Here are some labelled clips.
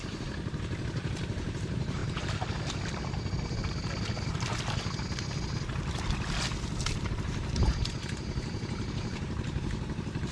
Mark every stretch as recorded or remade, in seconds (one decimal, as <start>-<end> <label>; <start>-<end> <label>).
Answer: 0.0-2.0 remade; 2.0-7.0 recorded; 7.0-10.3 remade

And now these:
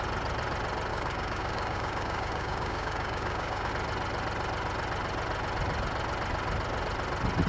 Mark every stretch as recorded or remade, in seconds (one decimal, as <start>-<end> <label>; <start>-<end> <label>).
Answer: 0.0-0.9 recorded; 0.9-3.7 remade; 3.7-7.5 recorded

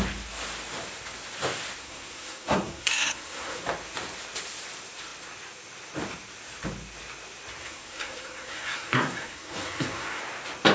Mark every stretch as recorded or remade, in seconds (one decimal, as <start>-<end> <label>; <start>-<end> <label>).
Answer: 0.0-1.8 recorded; 1.8-3.6 remade; 3.6-7.6 recorded; 7.6-10.2 remade; 10.2-10.7 recorded

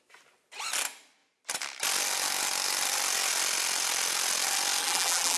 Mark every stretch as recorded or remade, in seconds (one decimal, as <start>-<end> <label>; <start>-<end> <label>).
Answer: 0.0-4.8 recorded; 4.8-5.4 remade

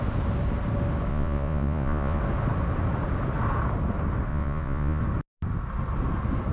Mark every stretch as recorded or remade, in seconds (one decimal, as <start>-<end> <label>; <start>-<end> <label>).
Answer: 0.0-1.1 recorded; 1.1-2.2 remade; 2.2-4.3 recorded; 4.3-5.0 remade; 5.0-6.5 recorded